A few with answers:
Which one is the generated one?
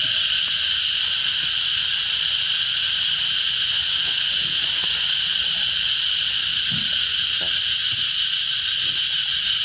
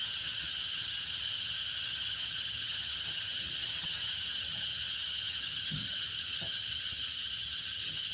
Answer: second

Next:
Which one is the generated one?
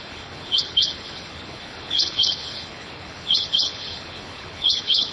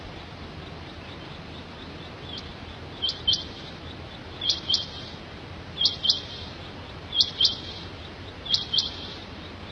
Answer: first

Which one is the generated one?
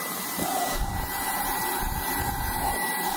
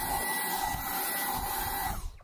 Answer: first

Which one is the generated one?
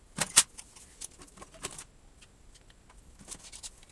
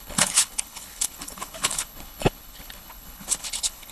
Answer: second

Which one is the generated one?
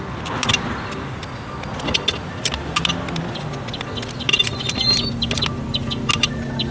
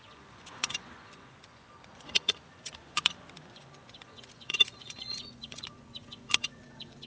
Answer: second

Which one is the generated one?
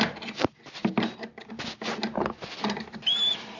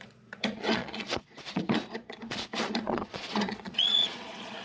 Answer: second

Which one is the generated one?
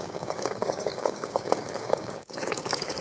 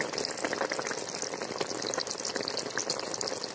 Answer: first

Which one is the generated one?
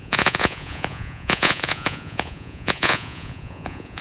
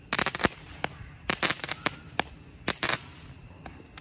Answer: first